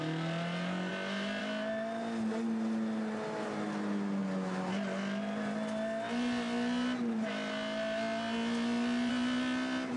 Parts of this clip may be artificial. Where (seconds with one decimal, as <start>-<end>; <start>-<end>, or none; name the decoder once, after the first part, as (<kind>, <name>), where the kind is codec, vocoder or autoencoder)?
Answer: none